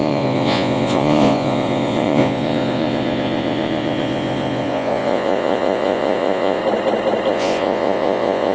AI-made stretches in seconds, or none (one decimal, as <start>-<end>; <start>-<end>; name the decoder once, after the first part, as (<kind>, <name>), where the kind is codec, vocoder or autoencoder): 0.0-6.6 (vocoder, Vocos); 7.3-8.5